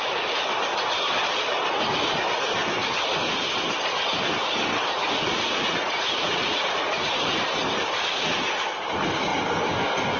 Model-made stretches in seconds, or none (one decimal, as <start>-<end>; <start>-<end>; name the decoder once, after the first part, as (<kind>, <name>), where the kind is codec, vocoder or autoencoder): 4.9-7.2 (vocoder, Vocos)